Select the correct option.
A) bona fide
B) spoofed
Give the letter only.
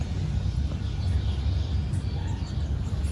A